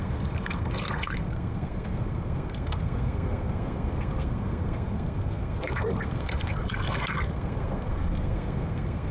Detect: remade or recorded remade